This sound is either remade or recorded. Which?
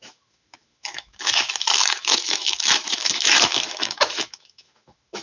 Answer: remade